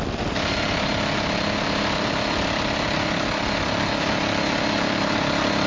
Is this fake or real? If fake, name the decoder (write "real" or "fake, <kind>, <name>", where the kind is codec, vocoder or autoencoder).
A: real